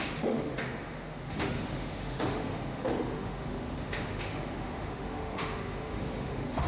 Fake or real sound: fake